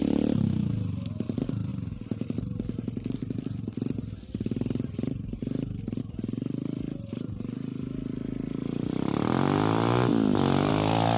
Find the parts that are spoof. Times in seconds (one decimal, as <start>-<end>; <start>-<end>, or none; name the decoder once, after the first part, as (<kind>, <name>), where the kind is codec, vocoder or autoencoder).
none